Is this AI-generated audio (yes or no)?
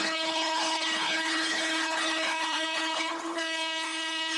yes